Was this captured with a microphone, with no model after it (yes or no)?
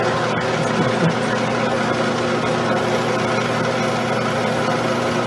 yes